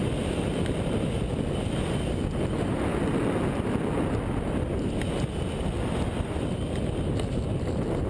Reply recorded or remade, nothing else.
recorded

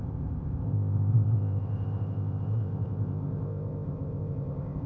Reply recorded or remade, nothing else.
remade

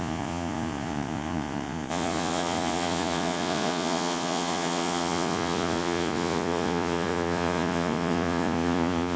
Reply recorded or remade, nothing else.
remade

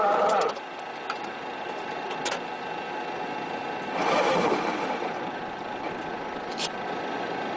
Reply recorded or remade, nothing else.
recorded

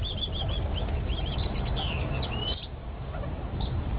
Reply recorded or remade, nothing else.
recorded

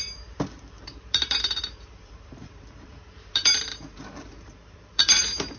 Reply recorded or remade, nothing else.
remade